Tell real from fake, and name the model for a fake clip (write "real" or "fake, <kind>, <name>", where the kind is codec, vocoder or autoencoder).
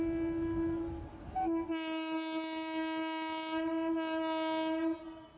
real